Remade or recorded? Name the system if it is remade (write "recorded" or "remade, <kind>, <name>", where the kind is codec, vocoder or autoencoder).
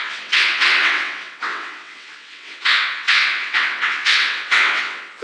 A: remade, vocoder, WaveNeXt